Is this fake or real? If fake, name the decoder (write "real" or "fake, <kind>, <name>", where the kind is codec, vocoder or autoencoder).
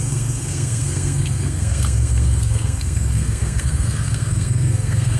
fake, codec, SNAC